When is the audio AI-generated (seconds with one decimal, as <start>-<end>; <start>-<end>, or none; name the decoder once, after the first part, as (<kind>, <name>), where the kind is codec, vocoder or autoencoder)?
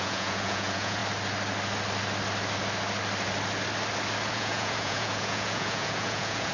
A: 0.0-1.0 (vocoder, Vocos); 4.3-6.5